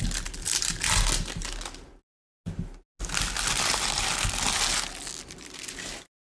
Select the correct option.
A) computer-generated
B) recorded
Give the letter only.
B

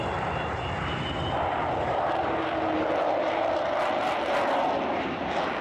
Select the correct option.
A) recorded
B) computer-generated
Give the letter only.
A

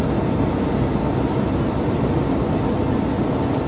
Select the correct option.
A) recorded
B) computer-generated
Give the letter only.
A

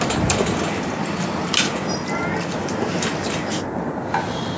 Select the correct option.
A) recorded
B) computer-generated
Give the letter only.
A